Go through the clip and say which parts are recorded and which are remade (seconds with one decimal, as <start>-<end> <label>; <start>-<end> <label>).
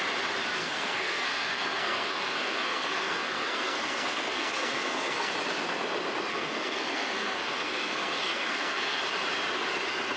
0.0-0.6 recorded; 0.6-5.3 remade; 5.3-6.3 recorded; 6.3-9.0 remade; 9.0-10.2 recorded